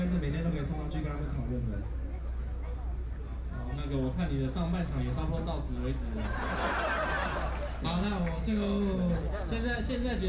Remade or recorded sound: recorded